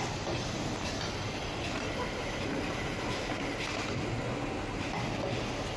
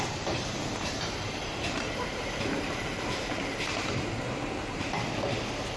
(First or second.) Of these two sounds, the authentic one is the first